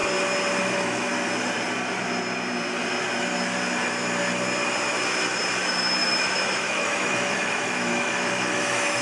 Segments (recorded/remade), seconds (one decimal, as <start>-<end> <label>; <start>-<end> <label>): 0.0-0.6 recorded; 0.6-1.1 remade; 1.1-5.6 recorded; 5.6-9.0 remade